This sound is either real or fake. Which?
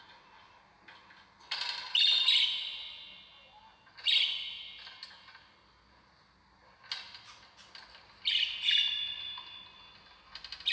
real